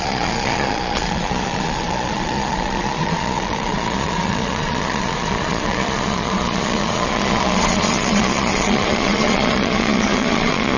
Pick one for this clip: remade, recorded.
remade